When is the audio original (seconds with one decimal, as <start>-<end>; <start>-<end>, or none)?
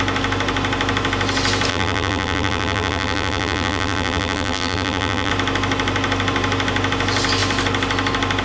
0.0-1.7; 5.3-8.4